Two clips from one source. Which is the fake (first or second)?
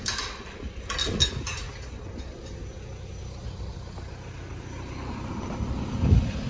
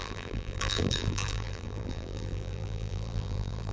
second